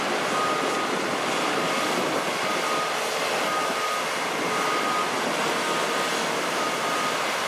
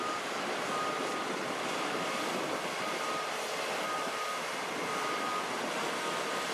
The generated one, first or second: second